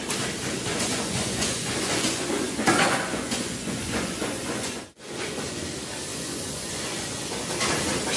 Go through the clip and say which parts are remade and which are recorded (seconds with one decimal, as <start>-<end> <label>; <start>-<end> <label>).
0.0-0.7 recorded; 0.7-5.6 remade; 5.6-6.1 recorded; 6.1-7.5 remade; 7.5-8.2 recorded